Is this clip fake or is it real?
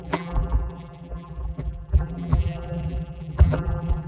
fake